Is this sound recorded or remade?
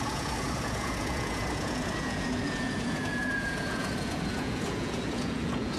remade